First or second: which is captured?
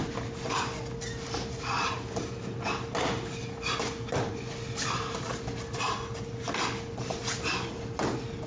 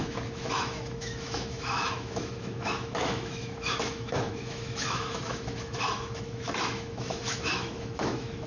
first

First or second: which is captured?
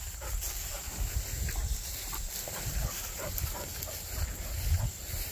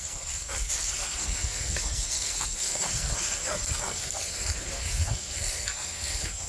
first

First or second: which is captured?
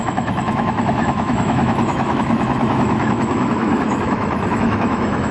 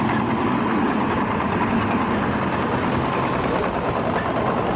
second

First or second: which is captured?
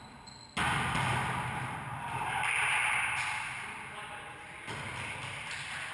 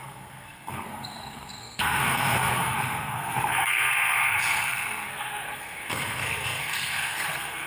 first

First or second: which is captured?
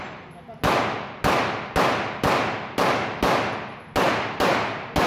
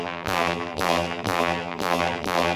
first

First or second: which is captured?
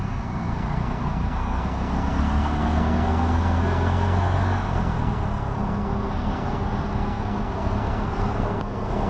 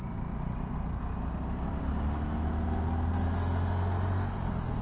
second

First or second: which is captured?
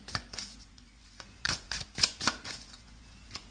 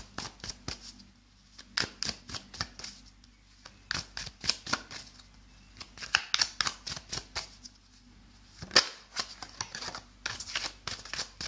second